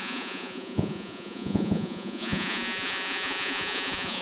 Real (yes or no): no